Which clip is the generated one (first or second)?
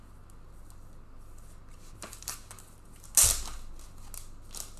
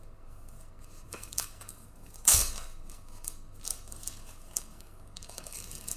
second